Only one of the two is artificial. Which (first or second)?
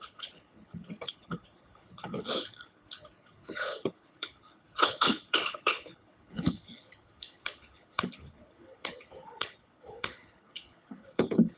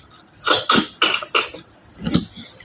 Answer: first